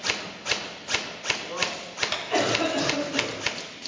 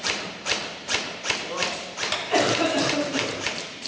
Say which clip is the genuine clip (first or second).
first